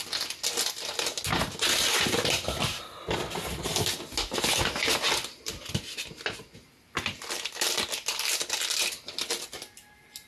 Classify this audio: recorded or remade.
recorded